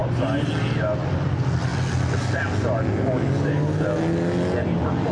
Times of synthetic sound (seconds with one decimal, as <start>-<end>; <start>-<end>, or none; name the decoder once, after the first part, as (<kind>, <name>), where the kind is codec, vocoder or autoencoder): 0.0-0.5 (vocoder, BigVGAN v2)